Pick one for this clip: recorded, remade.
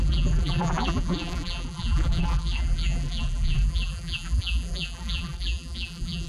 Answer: remade